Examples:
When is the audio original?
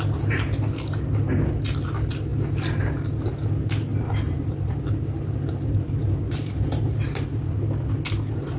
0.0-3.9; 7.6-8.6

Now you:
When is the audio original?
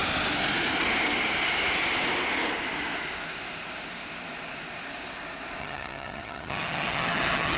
0.0-5.6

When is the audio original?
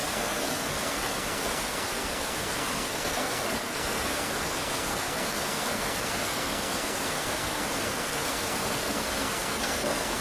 none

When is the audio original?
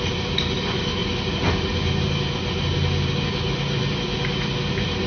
0.0-5.1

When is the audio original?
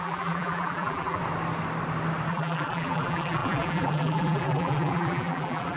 1.2-2.3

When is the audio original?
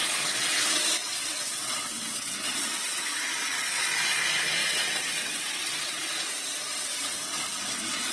3.1-4.6; 6.1-6.9; 7.4-8.1